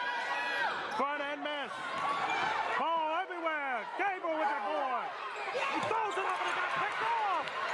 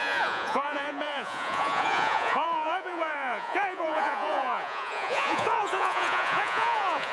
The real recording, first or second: first